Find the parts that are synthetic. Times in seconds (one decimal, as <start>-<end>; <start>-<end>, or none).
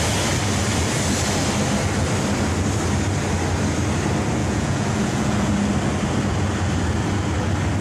4.4-5.5